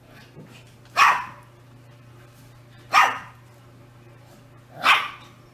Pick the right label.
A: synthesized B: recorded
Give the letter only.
B